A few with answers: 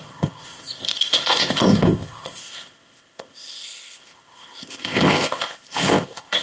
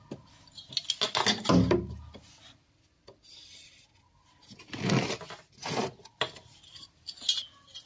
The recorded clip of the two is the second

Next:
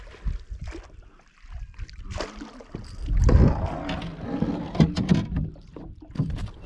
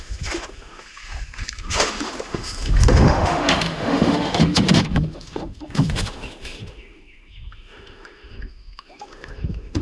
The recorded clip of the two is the first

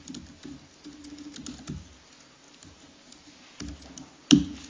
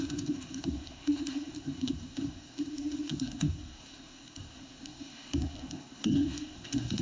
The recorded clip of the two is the first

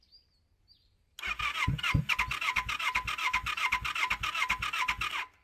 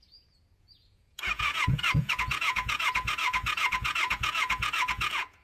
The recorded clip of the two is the first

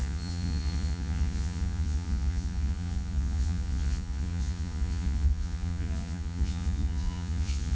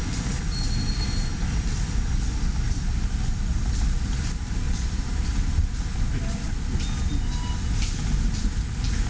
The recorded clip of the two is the second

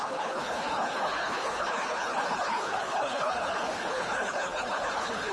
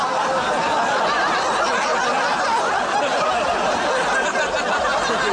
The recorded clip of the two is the second